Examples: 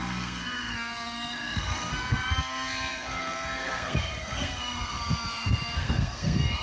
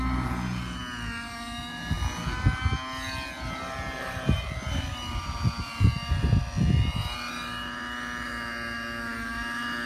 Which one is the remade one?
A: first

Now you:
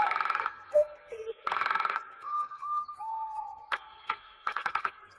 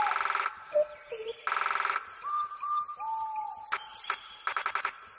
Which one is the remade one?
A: first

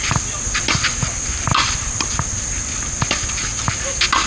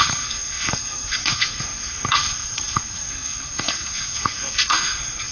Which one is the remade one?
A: second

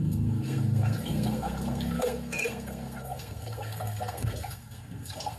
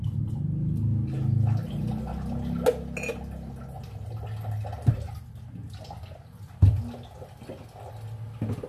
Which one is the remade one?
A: first